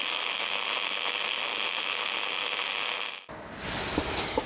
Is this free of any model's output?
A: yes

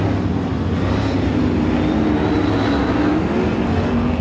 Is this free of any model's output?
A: yes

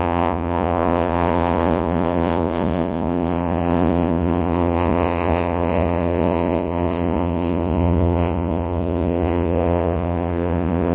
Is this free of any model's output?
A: no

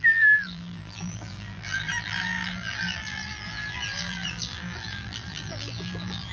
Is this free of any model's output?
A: no